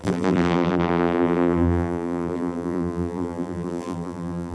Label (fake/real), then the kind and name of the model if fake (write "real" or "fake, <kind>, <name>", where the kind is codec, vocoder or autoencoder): fake, vocoder, BigVGAN v2